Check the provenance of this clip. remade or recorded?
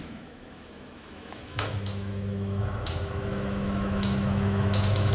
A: remade